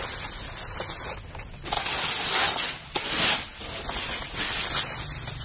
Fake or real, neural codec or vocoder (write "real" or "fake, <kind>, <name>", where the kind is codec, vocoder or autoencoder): real